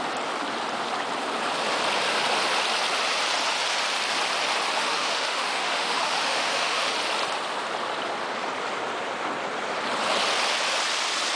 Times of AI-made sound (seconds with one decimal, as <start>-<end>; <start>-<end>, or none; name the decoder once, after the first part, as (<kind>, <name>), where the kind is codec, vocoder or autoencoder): 4.8-6.9 (autoencoder, DAC-VAE)